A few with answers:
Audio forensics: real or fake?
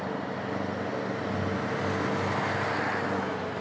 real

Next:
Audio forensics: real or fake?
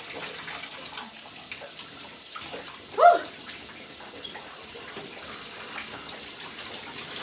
real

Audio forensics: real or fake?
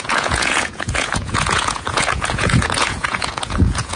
fake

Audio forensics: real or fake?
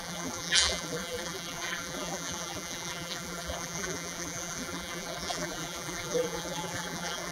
fake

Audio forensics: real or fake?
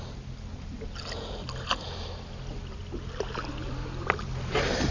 real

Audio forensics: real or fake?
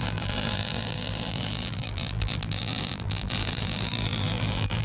fake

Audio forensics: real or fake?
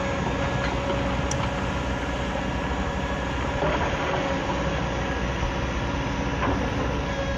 real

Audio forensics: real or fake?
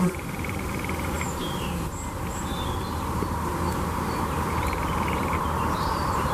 fake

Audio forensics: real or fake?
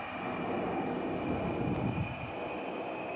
real